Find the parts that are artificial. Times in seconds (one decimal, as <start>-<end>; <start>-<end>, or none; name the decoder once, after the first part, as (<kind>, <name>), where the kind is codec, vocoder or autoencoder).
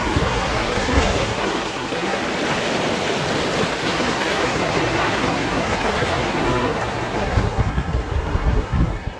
0.0-2.2 (codec, SNAC); 3.8-9.2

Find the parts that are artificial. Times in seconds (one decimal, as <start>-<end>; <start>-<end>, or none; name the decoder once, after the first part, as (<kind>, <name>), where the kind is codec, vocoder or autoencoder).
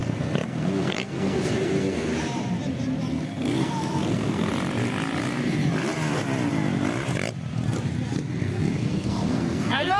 0.0-2.1 (codec, SNAC); 3.1-4.5; 8.4-10.0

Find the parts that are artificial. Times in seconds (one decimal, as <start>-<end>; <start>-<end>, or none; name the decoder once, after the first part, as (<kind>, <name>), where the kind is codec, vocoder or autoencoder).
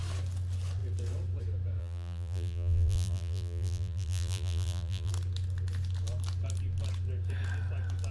1.8-5.1 (vocoder, BigVGAN v2)